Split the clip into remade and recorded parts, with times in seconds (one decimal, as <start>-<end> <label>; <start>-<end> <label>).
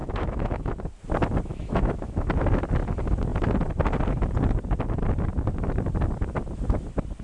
0.0-0.7 remade; 0.7-1.5 recorded; 1.5-2.3 remade; 2.3-7.2 recorded